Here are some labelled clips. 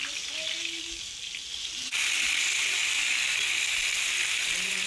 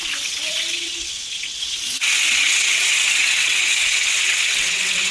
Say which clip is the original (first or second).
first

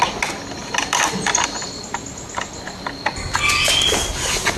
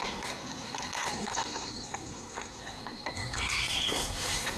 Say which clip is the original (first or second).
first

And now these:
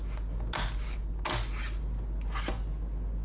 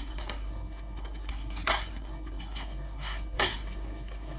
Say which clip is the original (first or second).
first